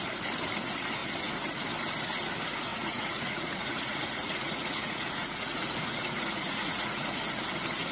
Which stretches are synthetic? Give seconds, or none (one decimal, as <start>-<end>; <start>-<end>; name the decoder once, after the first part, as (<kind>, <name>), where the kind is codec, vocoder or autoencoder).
2.7-7.2 (vocoder, Vocos)